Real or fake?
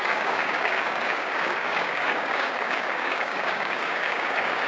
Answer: fake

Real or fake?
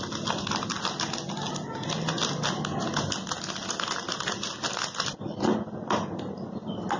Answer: real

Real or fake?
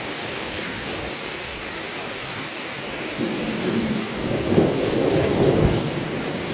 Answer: fake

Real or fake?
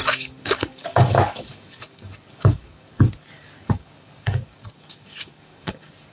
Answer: fake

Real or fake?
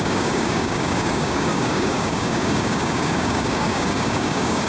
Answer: fake